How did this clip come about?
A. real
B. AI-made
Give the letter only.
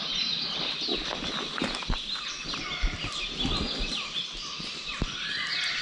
A